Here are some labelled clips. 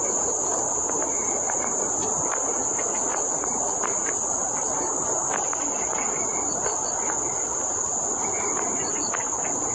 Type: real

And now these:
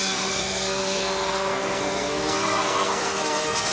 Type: fake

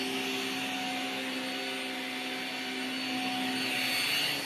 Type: real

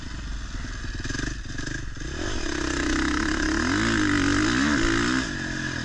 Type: real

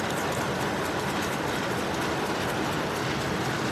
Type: real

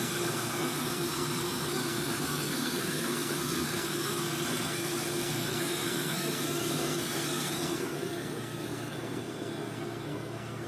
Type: fake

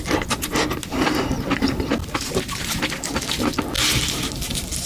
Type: real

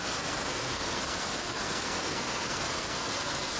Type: fake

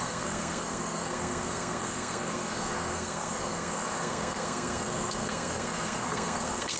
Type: fake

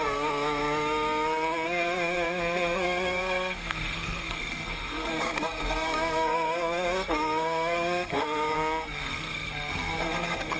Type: fake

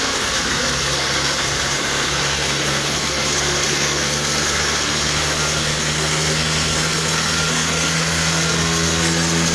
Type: fake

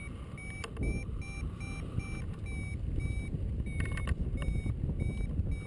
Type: real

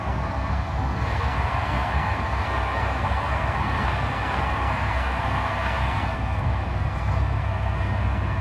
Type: fake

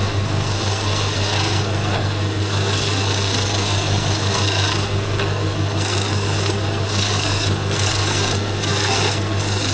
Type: fake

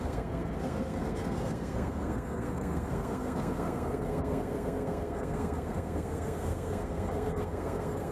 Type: fake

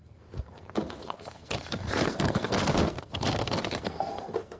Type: fake